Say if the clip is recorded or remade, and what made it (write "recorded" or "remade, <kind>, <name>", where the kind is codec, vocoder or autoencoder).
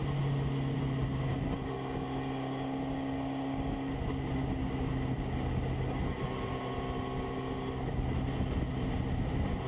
recorded